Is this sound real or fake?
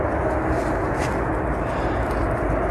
real